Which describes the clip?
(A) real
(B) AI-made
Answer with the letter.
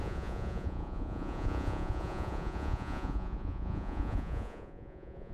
B